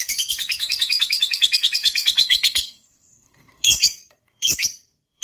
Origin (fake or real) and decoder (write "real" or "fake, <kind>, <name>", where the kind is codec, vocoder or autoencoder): fake, codec, SNAC